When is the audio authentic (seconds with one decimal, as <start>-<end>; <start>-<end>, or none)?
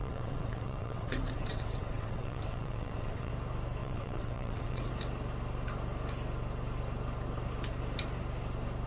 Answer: 3.3-3.8; 4.9-8.9